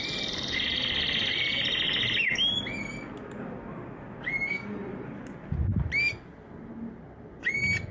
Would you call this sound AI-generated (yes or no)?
no